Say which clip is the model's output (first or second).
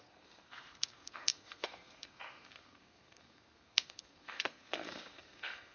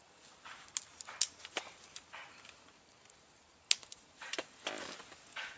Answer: first